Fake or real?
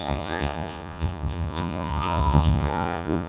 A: fake